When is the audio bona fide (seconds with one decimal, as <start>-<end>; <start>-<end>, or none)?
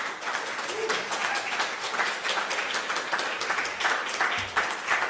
0.0-5.1